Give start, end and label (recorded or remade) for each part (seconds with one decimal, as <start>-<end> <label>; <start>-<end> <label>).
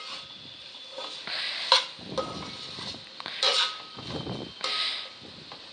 0.0-3.5 recorded; 3.5-4.3 remade; 4.3-5.7 recorded